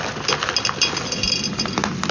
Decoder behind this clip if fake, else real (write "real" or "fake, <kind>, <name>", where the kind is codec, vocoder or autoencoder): real